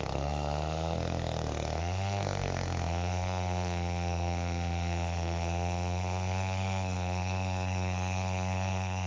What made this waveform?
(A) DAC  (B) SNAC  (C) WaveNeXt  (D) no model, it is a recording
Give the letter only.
B